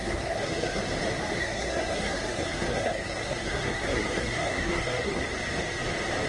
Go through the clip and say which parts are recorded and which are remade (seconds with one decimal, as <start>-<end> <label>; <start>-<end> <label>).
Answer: 0.0-0.8 remade; 0.8-1.4 recorded; 1.4-5.2 remade; 5.2-6.3 recorded